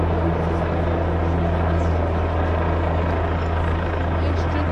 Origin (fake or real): real